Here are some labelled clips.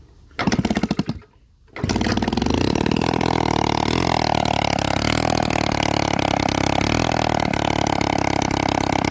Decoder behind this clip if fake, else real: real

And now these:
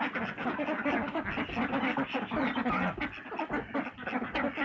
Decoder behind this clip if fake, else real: real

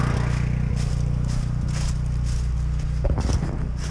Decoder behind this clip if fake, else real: real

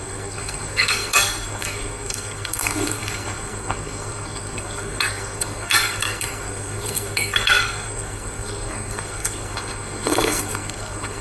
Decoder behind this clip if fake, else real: fake, codec, SNAC